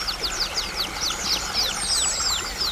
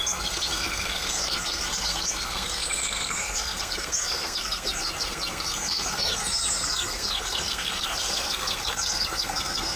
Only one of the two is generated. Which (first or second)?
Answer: second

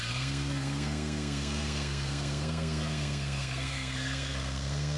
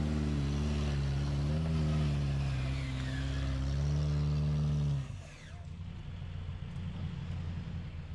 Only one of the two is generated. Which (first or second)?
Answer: first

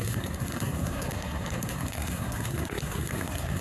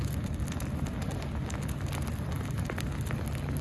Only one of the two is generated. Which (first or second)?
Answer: first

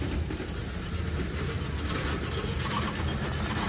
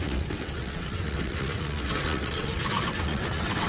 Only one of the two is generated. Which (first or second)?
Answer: second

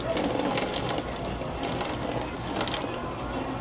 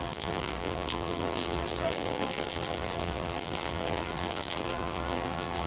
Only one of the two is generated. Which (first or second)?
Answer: second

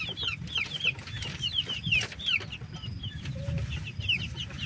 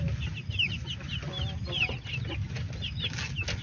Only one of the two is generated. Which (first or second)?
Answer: first